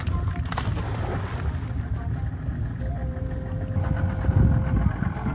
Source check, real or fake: real